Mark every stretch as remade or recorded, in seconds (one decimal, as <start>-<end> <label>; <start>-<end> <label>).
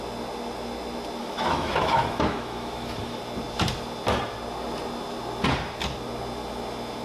0.0-1.2 recorded; 1.2-3.2 remade; 3.2-7.0 recorded